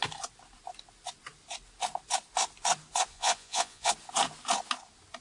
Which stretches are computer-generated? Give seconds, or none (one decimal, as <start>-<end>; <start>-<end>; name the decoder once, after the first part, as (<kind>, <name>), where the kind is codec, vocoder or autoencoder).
3.1-3.9 (vocoder, Vocos)